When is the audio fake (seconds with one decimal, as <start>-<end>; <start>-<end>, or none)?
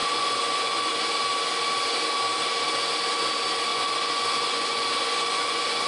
0.0-0.9; 3.7-5.9